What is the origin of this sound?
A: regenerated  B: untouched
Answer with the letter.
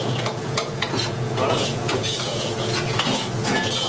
A